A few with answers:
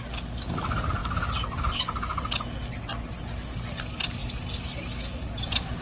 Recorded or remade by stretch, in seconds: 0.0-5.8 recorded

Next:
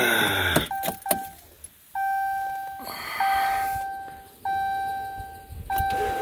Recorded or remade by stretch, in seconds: 0.0-6.2 recorded

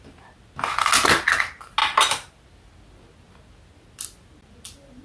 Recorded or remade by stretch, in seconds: 0.0-5.0 recorded

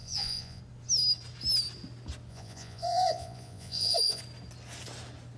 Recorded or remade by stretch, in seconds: 0.0-0.6 remade; 0.6-2.3 recorded; 2.3-4.2 remade; 4.2-5.4 recorded

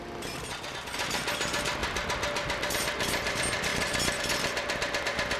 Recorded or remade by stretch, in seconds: 0.0-1.8 recorded; 1.8-2.7 remade; 2.7-3.7 recorded; 3.7-4.2 remade; 4.2-5.4 recorded

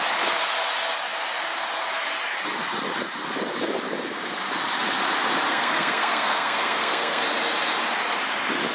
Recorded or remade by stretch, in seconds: 0.0-5.5 recorded; 5.5-7.2 remade; 7.2-8.7 recorded

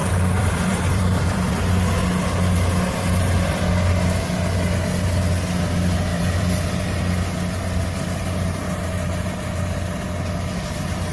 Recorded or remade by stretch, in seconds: 0.0-1.6 remade; 1.6-6.1 recorded; 6.1-6.8 remade; 6.8-11.1 recorded

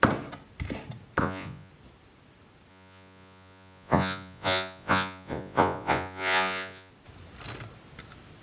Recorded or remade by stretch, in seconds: 0.0-1.2 recorded; 1.2-1.7 remade; 1.7-2.7 recorded; 2.7-6.9 remade; 6.9-8.4 recorded